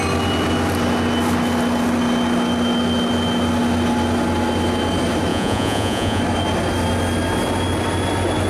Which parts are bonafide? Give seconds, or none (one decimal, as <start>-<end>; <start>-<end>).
0.0-5.3; 6.2-8.5